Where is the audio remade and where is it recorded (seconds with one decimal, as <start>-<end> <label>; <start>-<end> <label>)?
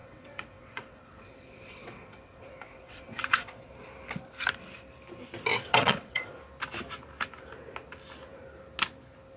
0.0-3.7 remade; 3.7-5.5 recorded; 5.5-6.3 remade; 6.3-9.4 recorded